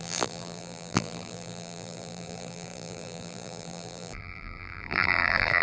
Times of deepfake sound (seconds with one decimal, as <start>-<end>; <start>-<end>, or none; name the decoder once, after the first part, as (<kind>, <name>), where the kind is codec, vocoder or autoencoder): 0.0-5.6 (vocoder, BigVGAN v2)